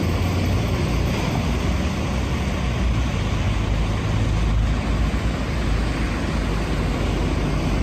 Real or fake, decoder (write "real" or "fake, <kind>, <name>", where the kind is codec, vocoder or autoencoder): real